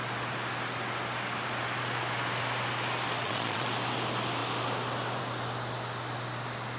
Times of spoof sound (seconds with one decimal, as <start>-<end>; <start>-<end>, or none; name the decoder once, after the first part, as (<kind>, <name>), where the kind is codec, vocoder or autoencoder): 3.2-3.7 (vocoder, Vocos)